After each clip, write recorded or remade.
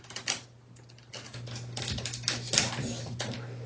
recorded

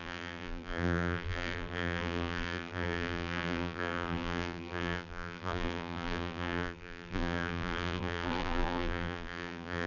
remade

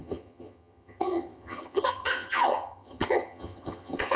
remade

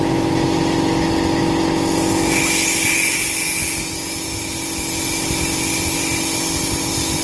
recorded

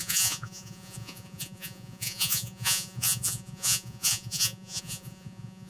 remade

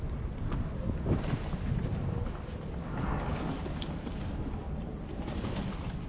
recorded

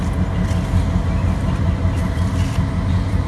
recorded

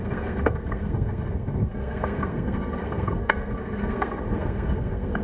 remade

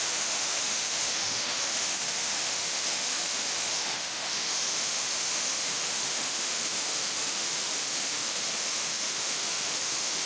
remade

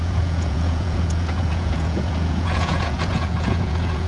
remade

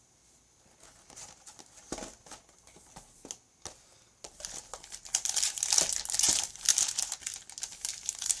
recorded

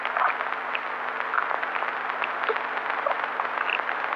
recorded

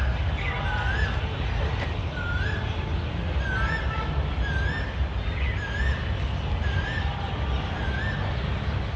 recorded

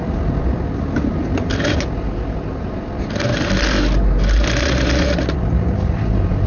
recorded